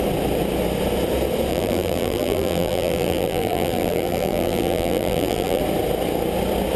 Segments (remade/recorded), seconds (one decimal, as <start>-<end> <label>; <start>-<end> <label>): 0.0-1.5 recorded; 1.5-5.6 remade; 5.6-6.8 recorded